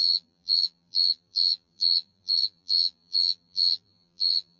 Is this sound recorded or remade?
remade